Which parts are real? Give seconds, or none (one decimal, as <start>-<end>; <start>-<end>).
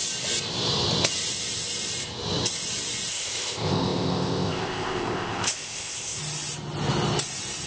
0.0-3.1; 6.2-7.7